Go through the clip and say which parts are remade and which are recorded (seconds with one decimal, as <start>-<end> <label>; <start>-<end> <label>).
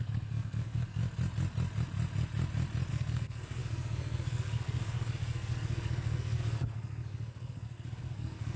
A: 0.0-1.0 remade; 1.0-2.9 recorded; 2.9-8.6 remade